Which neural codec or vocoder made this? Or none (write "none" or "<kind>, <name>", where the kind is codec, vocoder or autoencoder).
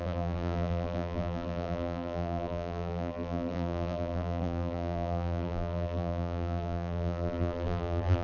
vocoder, BigVGAN v2